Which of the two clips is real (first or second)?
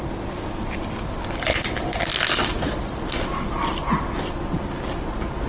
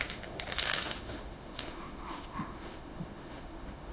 first